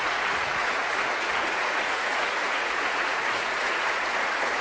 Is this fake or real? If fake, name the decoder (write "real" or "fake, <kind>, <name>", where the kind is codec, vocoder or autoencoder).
fake, vocoder, Vocos